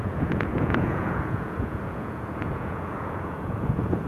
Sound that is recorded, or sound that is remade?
remade